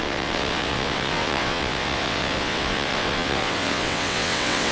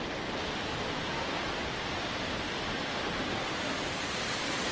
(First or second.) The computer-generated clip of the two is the first